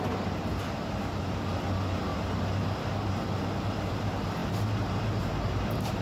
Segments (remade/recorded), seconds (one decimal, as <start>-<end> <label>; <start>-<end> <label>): 0.0-6.0 recorded